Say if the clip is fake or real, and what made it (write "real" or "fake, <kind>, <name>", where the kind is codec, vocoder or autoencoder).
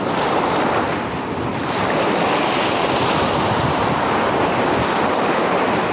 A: real